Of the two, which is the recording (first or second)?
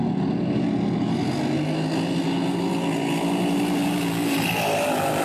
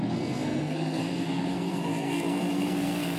first